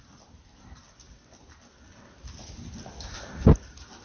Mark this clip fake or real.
real